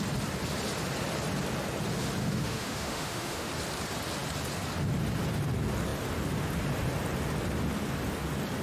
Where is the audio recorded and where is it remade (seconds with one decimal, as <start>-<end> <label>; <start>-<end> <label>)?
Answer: 0.0-2.2 recorded; 2.2-3.5 remade; 3.5-8.6 recorded